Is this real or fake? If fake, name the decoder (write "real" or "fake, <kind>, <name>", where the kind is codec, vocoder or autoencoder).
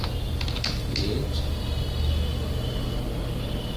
real